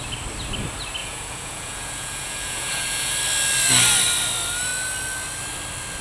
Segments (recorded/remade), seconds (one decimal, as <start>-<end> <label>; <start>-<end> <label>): 0.0-1.0 recorded; 1.0-3.1 remade; 3.1-6.0 recorded